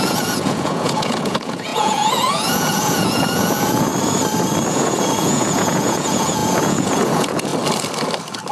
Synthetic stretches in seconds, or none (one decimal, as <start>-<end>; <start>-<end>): 0.0-3.9; 4.7-7.5